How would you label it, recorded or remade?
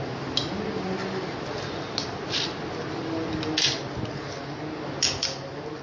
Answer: recorded